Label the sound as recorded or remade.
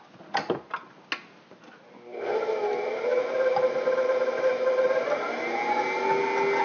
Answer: recorded